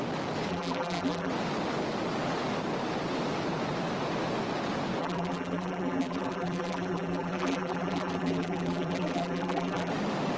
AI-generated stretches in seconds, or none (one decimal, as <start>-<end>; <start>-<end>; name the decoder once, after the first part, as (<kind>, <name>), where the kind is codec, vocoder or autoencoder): 0.5-1.3 (vocoder, BigVGAN v2); 5.0-9.9